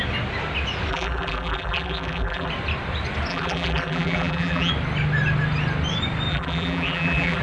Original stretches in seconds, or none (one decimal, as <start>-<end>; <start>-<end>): 0.0-0.9; 2.5-3.3; 4.7-6.3